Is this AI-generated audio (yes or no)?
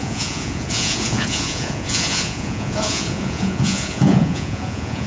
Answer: yes